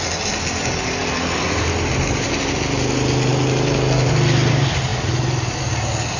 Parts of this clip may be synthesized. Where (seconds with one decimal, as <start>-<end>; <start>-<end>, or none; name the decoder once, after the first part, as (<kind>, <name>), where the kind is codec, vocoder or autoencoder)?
none